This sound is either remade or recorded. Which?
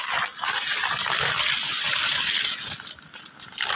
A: recorded